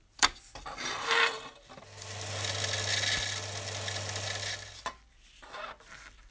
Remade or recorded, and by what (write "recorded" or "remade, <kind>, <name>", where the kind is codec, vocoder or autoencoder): recorded